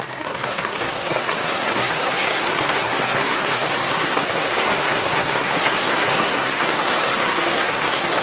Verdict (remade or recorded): remade